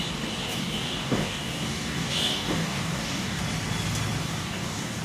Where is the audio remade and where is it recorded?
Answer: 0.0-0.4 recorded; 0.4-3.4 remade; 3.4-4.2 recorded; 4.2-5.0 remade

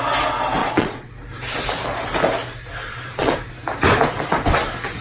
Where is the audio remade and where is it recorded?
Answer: 0.0-0.6 recorded; 0.6-1.1 remade; 1.1-2.8 recorded; 2.8-3.3 remade; 3.3-5.0 recorded

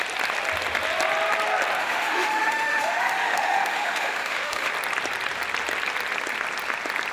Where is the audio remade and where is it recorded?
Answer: 0.0-1.8 recorded; 1.8-4.7 remade; 4.7-7.1 recorded

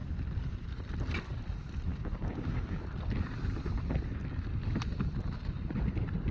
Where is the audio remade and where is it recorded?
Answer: 0.0-1.9 recorded; 1.9-2.8 remade; 2.8-6.3 recorded

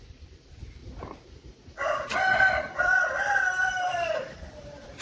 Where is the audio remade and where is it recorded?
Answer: 0.0-0.8 remade; 0.8-2.4 recorded; 2.4-5.0 remade